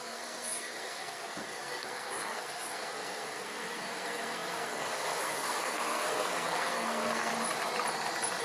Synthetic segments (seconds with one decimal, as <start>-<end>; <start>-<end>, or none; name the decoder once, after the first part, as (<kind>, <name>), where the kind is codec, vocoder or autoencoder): 0.0-7.3 (codec, SNAC)